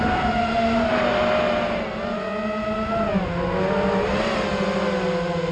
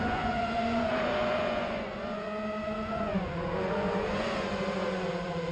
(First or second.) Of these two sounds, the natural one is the first